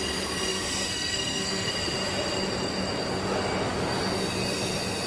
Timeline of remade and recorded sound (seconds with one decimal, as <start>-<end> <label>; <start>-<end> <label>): 0.0-0.5 recorded; 0.5-1.7 remade; 1.7-5.1 recorded